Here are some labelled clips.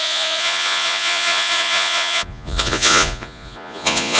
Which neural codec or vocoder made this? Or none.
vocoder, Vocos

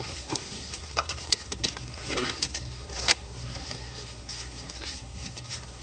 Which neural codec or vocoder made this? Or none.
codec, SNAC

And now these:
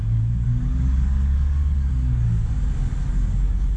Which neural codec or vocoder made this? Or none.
codec, DAC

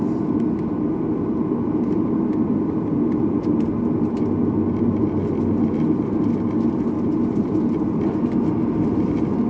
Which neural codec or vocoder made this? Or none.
none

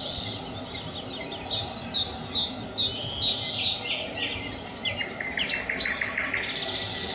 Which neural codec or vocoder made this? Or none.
none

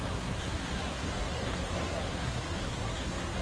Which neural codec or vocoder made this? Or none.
codec, SNAC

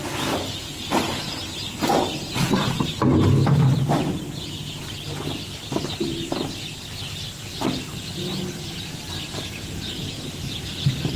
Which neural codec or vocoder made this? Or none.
none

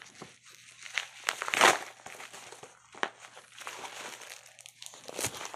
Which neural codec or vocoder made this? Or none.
none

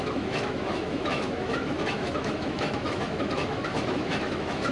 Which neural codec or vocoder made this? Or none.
autoencoder, DAC-VAE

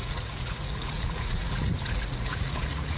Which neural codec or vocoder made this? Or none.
vocoder, Vocos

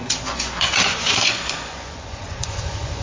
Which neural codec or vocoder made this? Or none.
vocoder, Vocos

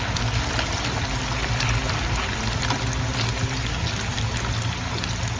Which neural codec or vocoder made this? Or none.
none